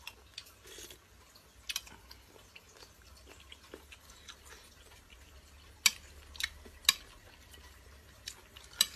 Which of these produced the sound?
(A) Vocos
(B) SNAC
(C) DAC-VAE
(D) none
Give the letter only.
D